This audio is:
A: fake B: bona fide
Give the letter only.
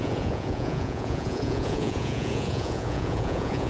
A